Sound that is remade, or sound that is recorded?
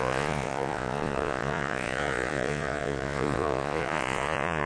remade